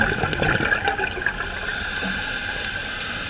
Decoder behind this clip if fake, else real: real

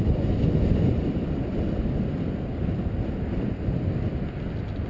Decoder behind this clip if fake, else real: real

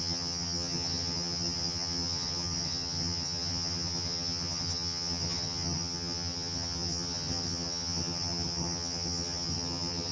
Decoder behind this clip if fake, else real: fake, vocoder, HiFi-GAN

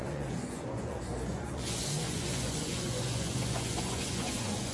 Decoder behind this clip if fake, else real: fake, vocoder, Vocos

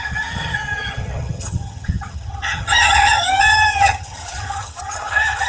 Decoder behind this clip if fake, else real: fake, vocoder, HiFi-GAN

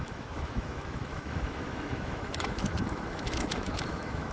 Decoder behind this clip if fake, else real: fake, autoencoder, DAC-VAE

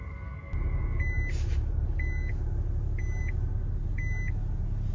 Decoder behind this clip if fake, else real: real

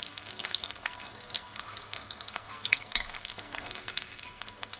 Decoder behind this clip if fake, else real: fake, codec, SNAC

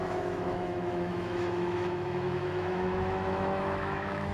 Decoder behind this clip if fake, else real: fake, autoencoder, DAC-VAE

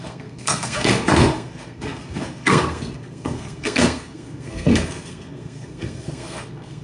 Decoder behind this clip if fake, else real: fake, codec, SNAC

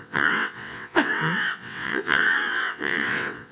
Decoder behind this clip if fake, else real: fake, vocoder, WaveNeXt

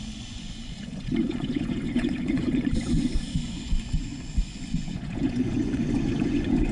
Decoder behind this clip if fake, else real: fake, vocoder, Vocos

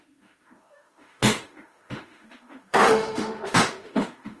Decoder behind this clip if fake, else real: fake, autoencoder, DAC-VAE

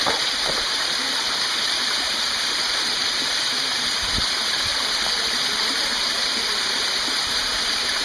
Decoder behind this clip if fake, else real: fake, vocoder, BigVGAN v2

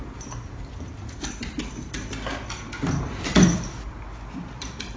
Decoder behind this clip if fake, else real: fake, vocoder, BigVGAN v2